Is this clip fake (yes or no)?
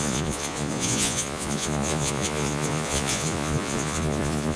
yes